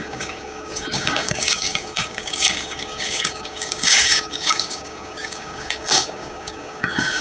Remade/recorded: remade